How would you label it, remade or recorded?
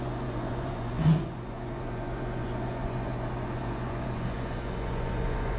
remade